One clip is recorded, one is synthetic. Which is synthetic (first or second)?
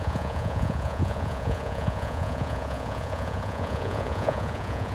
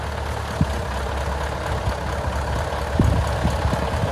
first